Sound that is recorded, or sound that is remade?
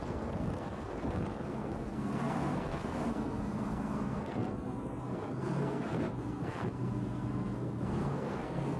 remade